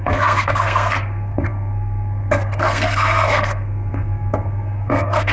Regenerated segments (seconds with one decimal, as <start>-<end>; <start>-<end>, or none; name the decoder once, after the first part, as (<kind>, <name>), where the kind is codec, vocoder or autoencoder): 0.0-5.3 (codec, SNAC)